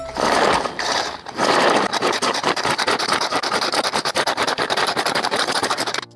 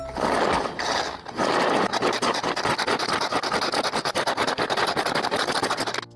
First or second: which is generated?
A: first